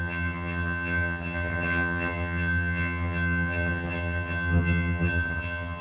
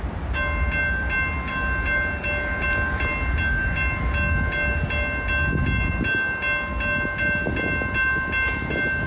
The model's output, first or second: first